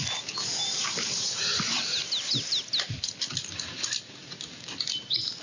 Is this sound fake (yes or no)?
no